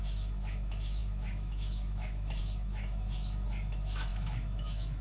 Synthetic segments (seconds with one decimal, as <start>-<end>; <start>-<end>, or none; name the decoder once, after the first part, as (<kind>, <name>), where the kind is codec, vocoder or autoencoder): 0.0-5.0 (autoencoder, DAC-VAE)